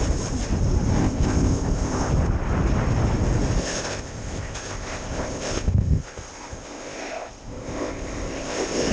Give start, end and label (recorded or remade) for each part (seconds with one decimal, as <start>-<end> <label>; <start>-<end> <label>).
0.0-1.0 recorded; 1.0-2.1 remade; 2.1-3.6 recorded; 3.6-8.9 remade